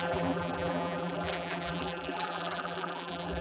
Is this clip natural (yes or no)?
no